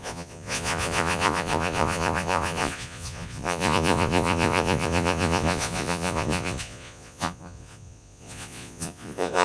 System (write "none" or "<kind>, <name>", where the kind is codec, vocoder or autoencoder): vocoder, Vocos